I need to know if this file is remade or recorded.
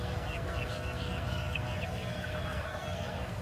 remade